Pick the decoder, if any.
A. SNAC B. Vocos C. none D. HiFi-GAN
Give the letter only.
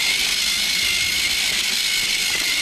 C